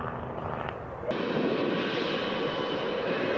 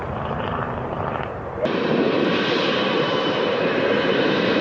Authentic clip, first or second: first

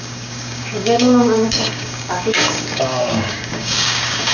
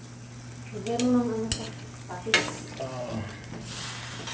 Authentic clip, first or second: second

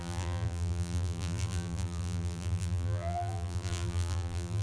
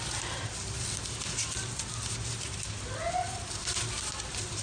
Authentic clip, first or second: second